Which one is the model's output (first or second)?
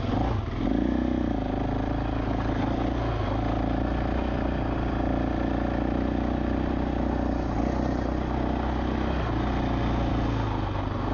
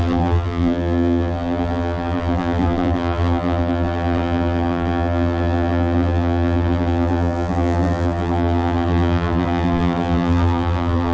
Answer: second